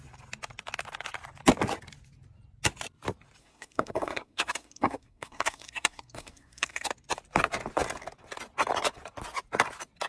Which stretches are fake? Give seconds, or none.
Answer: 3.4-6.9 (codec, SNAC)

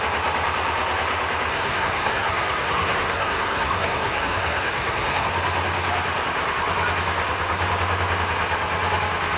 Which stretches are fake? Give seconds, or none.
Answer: 1.5-5.3 (codec, SNAC)